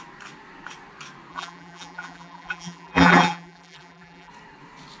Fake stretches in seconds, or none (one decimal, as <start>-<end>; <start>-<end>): 1.3-4.3